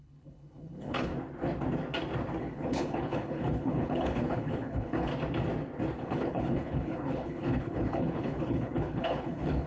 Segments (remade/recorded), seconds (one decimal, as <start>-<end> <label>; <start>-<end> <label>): 0.0-1.1 remade; 1.1-2.4 recorded; 2.4-5.1 remade; 5.1-6.0 recorded; 6.0-9.7 remade